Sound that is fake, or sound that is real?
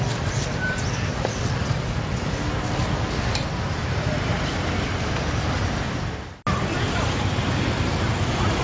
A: real